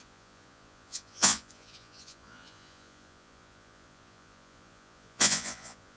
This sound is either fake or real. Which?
fake